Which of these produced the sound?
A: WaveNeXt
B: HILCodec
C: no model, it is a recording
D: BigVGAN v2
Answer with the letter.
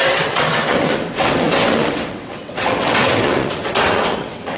A